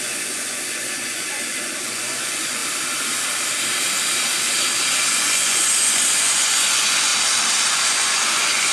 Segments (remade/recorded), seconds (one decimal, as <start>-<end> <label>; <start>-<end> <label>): 0.0-2.6 remade; 2.6-5.1 recorded; 5.1-7.1 remade; 7.1-7.7 recorded; 7.7-8.7 remade